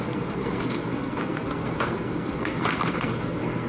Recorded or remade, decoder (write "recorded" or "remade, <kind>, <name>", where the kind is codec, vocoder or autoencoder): remade, codec, SNAC